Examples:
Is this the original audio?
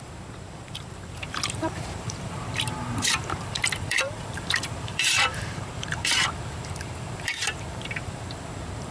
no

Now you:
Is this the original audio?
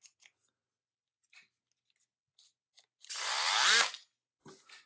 yes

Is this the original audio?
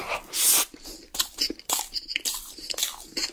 no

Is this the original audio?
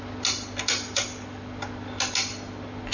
yes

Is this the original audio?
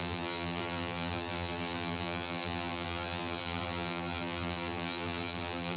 no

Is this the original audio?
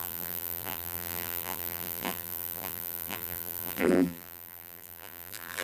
no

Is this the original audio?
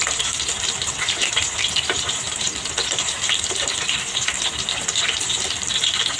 no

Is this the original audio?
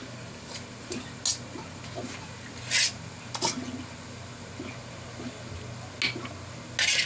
yes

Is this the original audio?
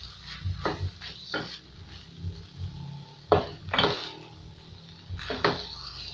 yes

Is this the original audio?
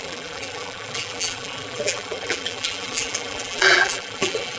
no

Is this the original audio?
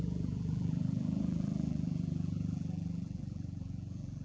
no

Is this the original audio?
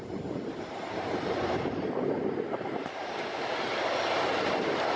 no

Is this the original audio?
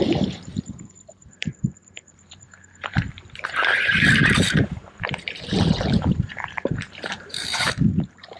no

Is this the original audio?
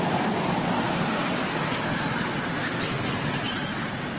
yes